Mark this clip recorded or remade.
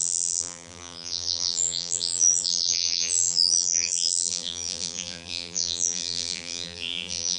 remade